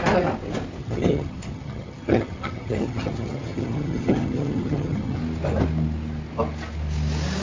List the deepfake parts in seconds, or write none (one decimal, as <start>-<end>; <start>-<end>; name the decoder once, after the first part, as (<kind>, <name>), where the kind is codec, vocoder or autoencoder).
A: 0.8-5.2 (vocoder, HiFi-GAN)